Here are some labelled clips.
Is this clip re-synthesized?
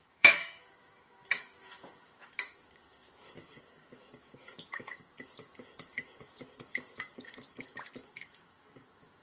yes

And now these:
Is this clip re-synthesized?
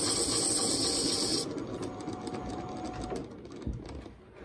no